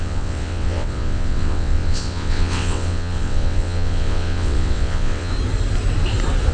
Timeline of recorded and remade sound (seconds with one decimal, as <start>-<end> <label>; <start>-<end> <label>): 0.0-5.3 remade; 5.3-6.5 recorded

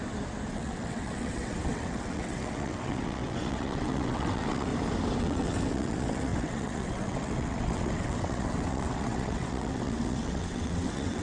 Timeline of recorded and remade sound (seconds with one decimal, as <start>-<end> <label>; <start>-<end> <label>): 0.0-0.5 recorded; 0.5-4.7 remade; 4.7-5.2 recorded; 5.2-11.2 remade

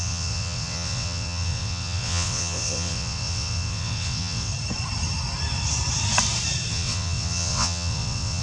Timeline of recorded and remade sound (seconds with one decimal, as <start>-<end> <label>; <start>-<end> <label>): 0.0-4.5 remade; 4.5-6.7 recorded; 6.7-8.4 remade